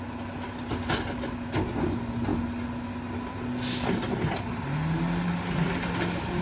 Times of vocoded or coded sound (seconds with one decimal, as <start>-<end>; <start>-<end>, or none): none